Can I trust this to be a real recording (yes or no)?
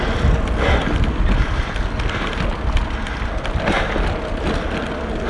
yes